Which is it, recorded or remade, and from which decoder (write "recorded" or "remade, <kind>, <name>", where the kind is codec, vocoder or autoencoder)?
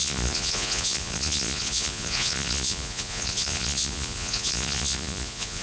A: remade, vocoder, Vocos